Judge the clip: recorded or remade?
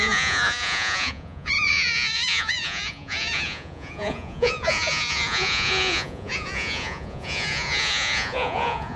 remade